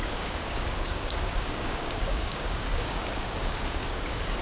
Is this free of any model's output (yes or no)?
no